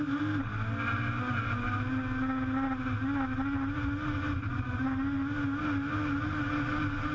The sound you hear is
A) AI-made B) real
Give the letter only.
B